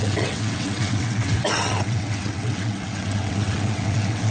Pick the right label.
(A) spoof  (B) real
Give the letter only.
A